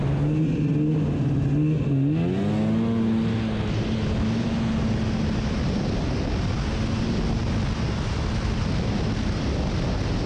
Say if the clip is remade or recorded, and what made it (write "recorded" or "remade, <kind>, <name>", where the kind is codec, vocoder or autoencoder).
recorded